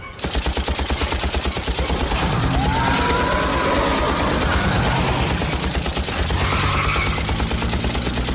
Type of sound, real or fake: real